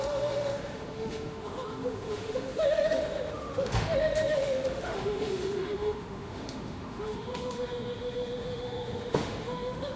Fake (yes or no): yes